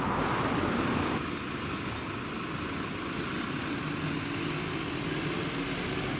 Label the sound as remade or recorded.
recorded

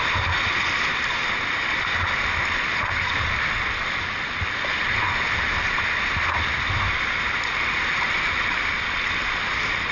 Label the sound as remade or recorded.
recorded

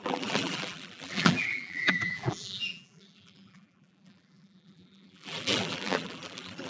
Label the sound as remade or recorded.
remade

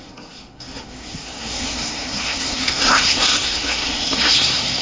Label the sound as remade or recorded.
remade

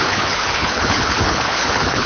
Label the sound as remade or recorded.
remade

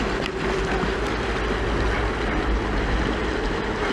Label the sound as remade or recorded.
recorded